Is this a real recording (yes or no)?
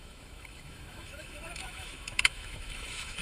no